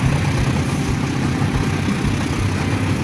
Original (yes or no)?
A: yes